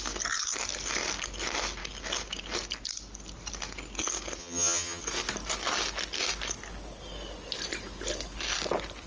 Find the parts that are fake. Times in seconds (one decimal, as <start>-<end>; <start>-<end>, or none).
4.4-5.0